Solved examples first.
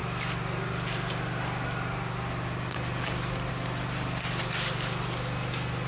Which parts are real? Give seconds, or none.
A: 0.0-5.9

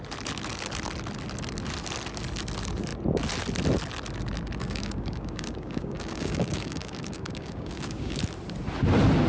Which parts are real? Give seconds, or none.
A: 0.0-4.6; 8.2-9.3